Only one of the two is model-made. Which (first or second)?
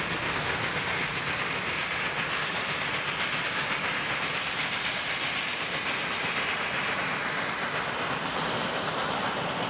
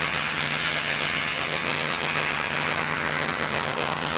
second